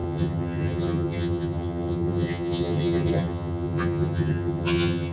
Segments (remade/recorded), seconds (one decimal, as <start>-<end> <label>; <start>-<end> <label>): 0.0-5.1 remade

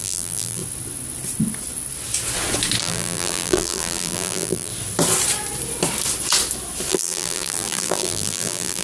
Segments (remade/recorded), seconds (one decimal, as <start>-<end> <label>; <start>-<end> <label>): 0.0-0.6 remade; 0.6-2.8 recorded; 2.8-4.7 remade; 4.7-6.9 recorded; 6.9-8.8 remade

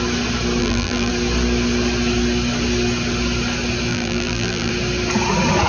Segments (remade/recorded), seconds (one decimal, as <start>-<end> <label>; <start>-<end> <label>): 0.0-0.6 recorded; 0.6-1.1 remade; 1.1-3.9 recorded; 3.9-4.7 remade; 4.7-5.7 recorded

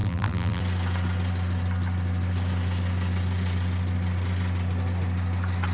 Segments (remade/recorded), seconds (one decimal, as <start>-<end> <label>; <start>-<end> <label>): 0.0-0.6 remade; 0.6-5.7 recorded

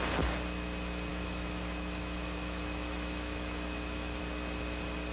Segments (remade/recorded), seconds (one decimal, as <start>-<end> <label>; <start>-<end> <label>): 0.0-1.1 recorded; 1.1-4.2 remade; 4.2-5.1 recorded

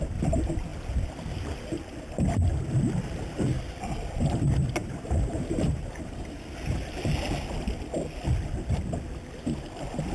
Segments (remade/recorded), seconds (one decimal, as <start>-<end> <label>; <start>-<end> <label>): 0.0-4.8 recorded; 4.8-6.4 remade; 6.4-10.1 recorded

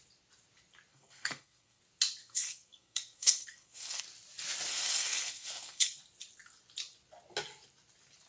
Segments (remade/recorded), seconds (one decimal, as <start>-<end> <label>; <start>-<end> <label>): 0.0-0.9 recorded; 0.9-1.8 remade; 1.8-2.2 recorded; 2.2-4.0 remade; 4.0-4.7 recorded; 4.7-6.0 remade; 6.0-8.3 recorded

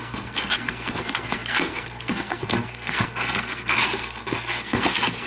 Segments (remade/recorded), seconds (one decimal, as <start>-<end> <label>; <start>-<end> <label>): 0.0-5.3 remade